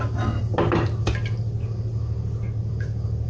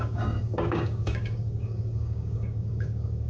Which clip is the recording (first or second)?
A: first